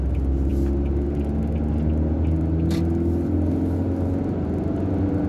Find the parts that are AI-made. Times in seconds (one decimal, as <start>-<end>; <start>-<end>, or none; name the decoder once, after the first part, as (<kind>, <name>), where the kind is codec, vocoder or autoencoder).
none